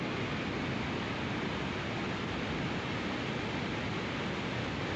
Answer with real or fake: real